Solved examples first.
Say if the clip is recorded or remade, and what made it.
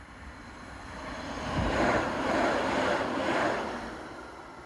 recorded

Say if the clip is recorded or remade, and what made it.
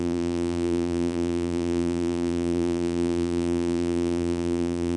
remade, vocoder, BigVGAN v2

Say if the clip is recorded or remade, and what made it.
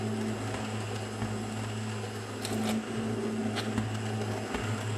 recorded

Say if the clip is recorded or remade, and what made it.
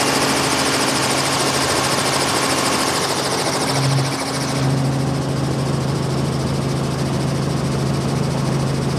recorded